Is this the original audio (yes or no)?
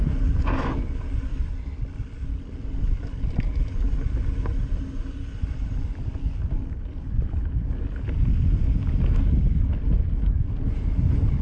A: yes